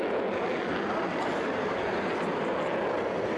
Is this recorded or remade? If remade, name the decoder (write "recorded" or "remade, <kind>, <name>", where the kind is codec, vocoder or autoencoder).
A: recorded